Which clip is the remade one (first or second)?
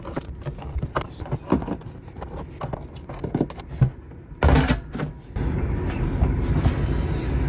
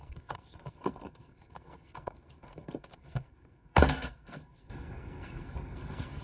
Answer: second